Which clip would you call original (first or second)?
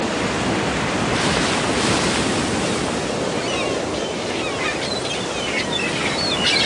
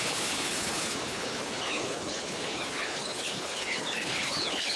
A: first